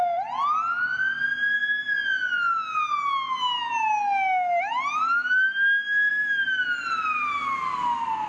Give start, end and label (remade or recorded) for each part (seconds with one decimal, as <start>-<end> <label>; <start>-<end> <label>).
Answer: 0.0-8.3 recorded